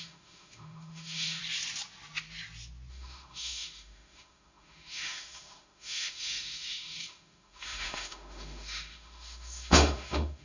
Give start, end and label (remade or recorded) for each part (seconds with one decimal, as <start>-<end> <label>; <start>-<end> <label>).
0.0-1.4 remade; 1.4-2.9 recorded; 2.9-10.4 remade